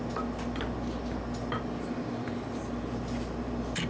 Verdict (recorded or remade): recorded